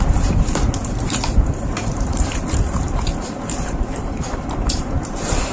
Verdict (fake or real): fake